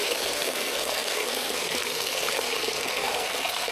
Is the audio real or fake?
fake